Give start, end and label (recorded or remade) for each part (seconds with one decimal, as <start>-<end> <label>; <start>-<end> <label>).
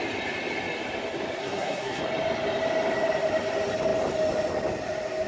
0.0-1.4 recorded; 1.4-2.0 remade; 2.0-5.3 recorded